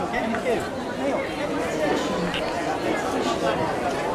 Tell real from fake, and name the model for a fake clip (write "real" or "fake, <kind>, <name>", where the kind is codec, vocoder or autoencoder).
real